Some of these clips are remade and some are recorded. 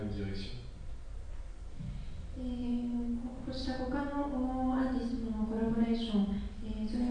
recorded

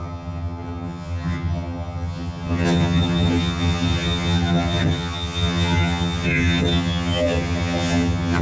remade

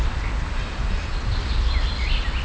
recorded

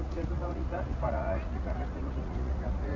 remade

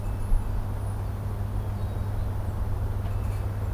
recorded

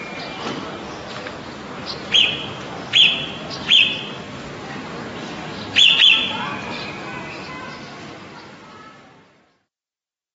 recorded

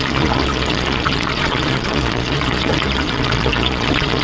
remade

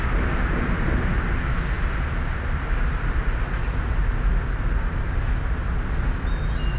recorded